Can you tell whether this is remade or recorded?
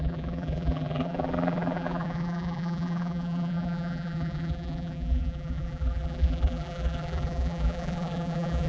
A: remade